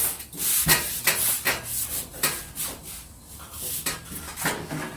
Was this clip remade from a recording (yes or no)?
no